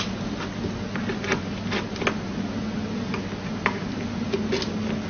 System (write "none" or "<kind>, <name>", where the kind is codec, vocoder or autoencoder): none